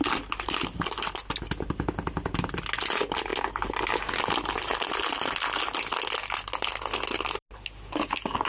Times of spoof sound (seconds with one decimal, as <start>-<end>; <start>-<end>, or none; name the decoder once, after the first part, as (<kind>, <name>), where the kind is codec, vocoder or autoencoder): none